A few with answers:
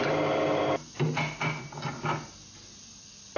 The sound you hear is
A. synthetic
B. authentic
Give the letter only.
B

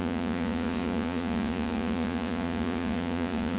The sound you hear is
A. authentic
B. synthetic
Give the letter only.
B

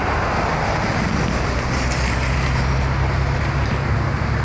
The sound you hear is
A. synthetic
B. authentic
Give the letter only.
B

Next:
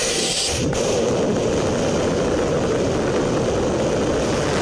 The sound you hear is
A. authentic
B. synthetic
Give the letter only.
A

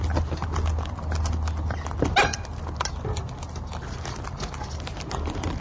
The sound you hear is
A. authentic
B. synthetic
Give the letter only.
A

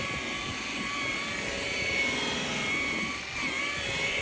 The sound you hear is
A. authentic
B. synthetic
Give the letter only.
A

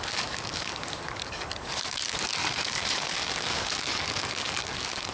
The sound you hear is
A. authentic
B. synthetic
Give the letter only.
B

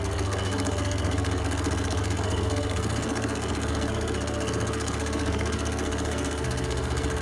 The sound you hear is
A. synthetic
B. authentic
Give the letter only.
A